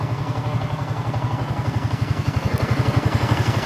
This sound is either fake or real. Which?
fake